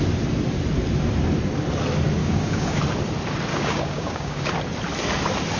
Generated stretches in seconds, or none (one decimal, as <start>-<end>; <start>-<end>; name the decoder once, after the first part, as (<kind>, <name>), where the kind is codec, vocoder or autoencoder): 2.2-2.8 (codec, DAC); 3.5-4.5